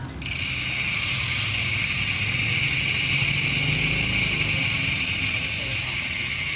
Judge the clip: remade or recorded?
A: recorded